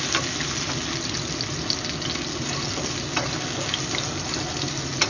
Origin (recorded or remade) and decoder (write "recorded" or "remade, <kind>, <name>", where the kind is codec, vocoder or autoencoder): recorded